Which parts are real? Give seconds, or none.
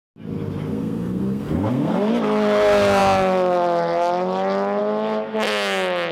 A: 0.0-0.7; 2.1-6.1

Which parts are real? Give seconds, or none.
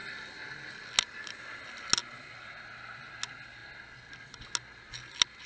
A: 0.0-5.5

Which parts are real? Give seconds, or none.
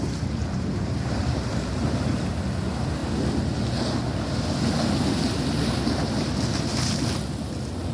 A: 0.0-0.4; 2.3-7.9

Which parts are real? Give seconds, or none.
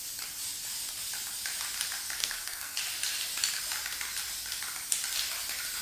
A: 0.0-2.2; 2.8-5.8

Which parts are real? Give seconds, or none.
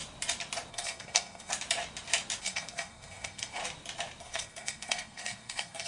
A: 0.0-0.7; 1.5-2.4; 3.6-4.2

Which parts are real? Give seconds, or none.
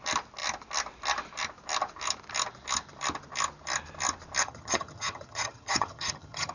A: 0.0-4.4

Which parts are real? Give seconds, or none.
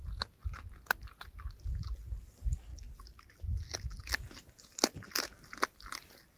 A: 0.0-6.4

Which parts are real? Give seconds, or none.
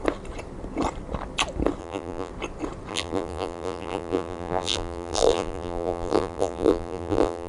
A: 0.0-1.8; 2.3-2.9